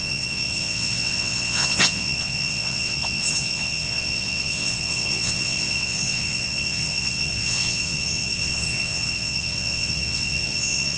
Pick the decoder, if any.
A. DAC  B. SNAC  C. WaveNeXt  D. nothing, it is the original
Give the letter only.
C